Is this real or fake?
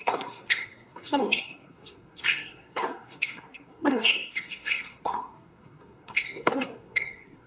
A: fake